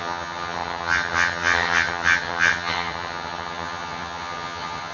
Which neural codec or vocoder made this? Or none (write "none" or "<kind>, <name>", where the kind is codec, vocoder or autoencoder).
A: vocoder, HiFi-GAN